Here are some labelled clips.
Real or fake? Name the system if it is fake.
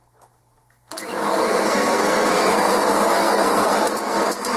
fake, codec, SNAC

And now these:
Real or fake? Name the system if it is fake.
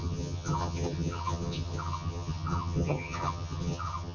fake, vocoder, HiFi-GAN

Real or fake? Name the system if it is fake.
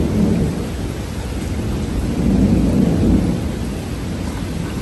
real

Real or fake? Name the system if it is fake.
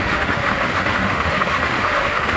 fake, autoencoder, DAC-VAE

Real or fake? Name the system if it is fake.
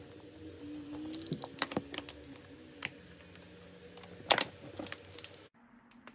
real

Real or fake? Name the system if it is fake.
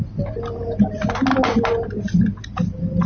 real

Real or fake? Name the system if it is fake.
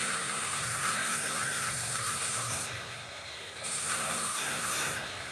fake, codec, SNAC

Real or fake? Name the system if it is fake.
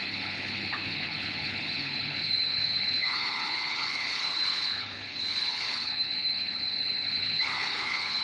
fake, codec, HILCodec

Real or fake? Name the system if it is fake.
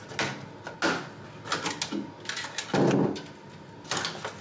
real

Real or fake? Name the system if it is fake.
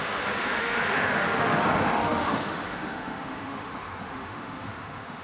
fake, autoencoder, DAC-VAE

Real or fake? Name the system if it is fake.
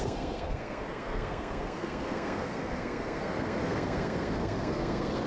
fake, codec, SNAC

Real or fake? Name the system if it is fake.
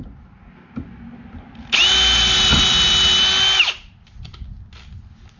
real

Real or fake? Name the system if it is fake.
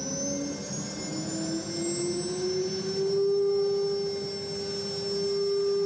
real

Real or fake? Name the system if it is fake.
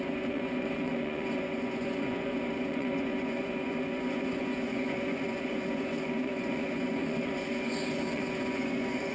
fake, vocoder, Vocos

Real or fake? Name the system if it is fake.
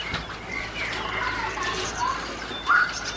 real